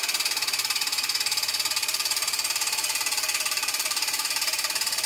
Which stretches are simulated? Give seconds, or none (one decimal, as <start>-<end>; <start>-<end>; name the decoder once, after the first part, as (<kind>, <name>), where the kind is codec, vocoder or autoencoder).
1.8-5.1 (vocoder, BigVGAN v2)